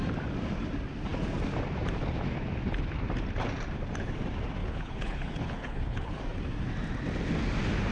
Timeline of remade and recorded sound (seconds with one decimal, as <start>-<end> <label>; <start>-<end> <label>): 0.0-4.6 recorded; 4.6-6.2 remade; 6.2-7.9 recorded